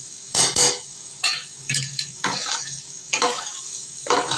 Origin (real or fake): fake